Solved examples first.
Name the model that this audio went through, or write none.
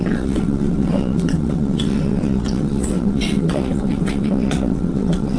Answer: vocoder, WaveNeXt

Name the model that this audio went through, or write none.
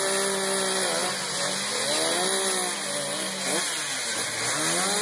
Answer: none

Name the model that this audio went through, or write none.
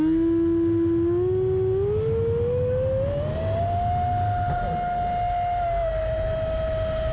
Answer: none